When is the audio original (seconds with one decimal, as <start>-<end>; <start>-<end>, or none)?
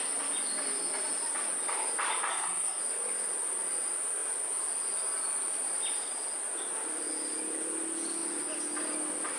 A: 0.0-2.3; 2.8-9.4